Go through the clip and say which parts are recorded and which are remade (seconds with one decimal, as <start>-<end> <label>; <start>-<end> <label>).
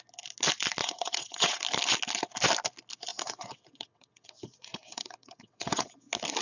0.0-0.8 recorded; 0.8-1.6 remade; 1.6-3.1 recorded; 3.1-5.9 remade; 5.9-6.4 recorded